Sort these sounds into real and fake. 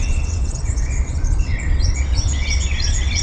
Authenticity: fake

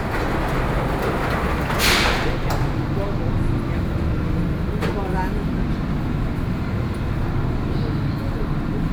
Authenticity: real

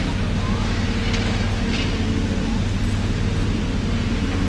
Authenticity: real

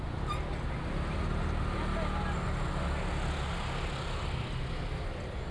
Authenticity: real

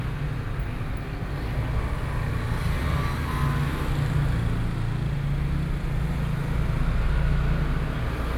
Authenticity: real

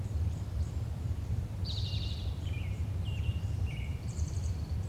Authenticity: fake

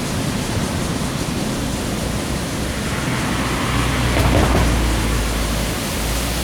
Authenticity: real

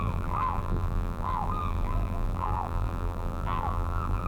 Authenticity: fake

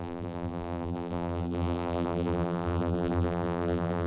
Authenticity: fake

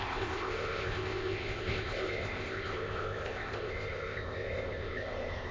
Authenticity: fake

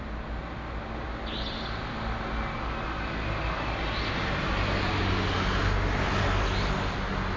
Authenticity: real